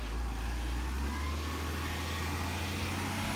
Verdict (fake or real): real